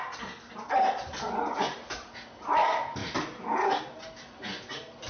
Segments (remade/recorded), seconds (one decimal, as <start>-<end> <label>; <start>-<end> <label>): 0.0-5.1 recorded